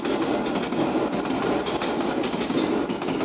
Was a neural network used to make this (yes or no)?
no